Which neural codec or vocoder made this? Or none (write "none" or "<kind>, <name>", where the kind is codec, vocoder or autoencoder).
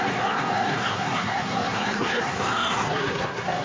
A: codec, SNAC